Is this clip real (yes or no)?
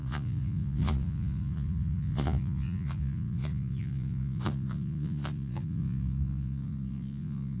no